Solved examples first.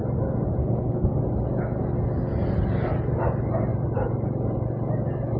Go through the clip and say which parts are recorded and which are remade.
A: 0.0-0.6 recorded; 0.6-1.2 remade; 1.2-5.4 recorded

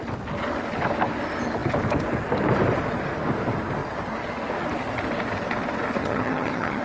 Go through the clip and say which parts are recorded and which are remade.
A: 0.0-6.0 recorded; 6.0-6.8 remade

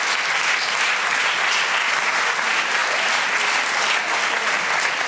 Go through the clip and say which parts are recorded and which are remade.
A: 0.0-2.8 recorded; 2.8-4.0 remade; 4.0-5.1 recorded

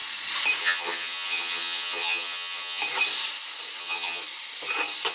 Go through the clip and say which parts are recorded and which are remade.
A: 0.0-0.6 recorded; 0.6-2.8 remade; 2.8-3.8 recorded; 3.8-4.2 remade; 4.2-5.1 recorded

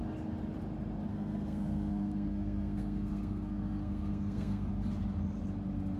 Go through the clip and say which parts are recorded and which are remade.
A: 0.0-1.1 recorded; 1.1-4.7 remade; 4.7-6.0 recorded